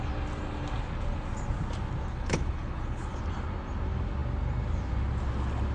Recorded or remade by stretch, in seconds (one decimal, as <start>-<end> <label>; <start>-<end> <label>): 0.0-2.1 recorded; 2.1-3.2 remade; 3.2-5.7 recorded